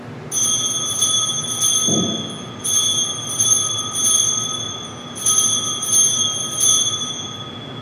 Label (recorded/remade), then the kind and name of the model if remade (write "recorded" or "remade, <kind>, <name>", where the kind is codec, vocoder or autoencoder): recorded